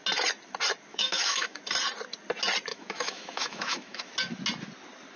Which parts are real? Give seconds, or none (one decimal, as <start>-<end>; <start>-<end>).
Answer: 0.0-0.9; 1.6-2.7; 4.1-5.2